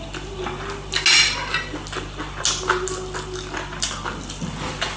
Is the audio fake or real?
real